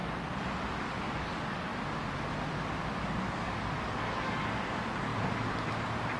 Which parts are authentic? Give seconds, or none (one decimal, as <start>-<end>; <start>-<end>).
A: 0.0-0.7; 1.7-3.3; 5.1-6.2